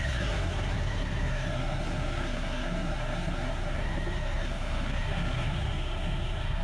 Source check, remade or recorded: remade